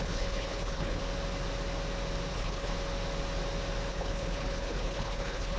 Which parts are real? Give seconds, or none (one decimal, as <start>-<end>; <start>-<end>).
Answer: 1.0-2.3; 2.7-3.9